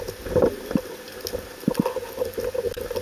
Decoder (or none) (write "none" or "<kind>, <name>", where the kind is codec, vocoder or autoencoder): none